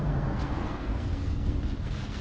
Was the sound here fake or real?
fake